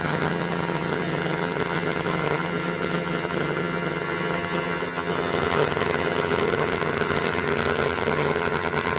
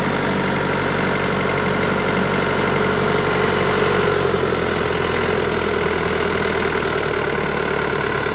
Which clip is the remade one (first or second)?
first